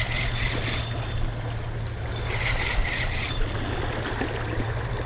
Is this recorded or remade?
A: recorded